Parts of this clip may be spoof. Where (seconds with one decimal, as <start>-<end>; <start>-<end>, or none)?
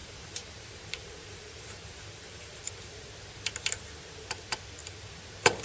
0.0-3.1